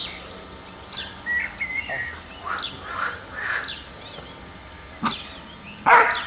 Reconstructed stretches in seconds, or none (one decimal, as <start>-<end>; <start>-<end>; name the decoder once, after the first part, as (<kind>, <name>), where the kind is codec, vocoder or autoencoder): none